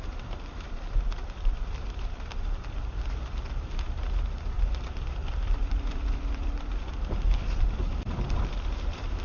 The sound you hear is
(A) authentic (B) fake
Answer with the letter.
B